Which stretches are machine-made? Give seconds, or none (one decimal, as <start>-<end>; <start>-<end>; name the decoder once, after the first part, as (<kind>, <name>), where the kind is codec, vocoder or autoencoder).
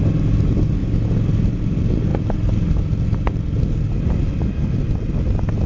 none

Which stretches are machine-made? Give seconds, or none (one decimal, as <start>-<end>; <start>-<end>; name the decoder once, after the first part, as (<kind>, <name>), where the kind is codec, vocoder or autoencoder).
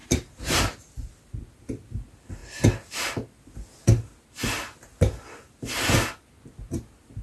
0.0-0.6 (vocoder, BigVGAN v2)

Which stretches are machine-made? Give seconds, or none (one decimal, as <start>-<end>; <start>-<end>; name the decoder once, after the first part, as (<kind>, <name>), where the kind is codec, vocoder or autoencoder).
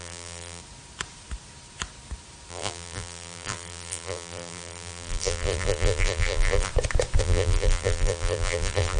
0.0-0.6 (vocoder, BigVGAN v2); 2.5-6.7; 7.2-9.0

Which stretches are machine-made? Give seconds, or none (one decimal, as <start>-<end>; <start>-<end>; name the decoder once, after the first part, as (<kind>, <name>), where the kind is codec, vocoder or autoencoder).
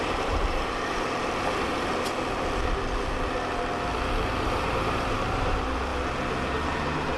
0.0-1.9 (vocoder, BigVGAN v2); 4.4-5.9; 6.7-7.2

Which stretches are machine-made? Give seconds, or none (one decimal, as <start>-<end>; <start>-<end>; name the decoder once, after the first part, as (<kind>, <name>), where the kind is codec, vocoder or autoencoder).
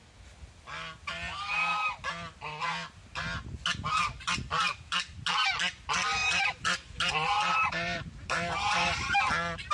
6.2-8.9 (vocoder, BigVGAN v2)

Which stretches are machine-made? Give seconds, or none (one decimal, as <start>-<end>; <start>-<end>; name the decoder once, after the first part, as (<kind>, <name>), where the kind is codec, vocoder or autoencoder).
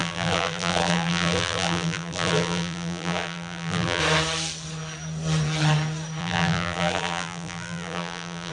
0.0-4.0 (vocoder, BigVGAN v2); 6.2-8.5